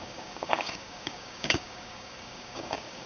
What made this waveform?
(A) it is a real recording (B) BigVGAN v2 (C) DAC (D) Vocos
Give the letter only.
C